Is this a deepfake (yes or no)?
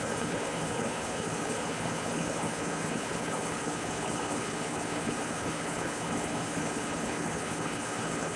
yes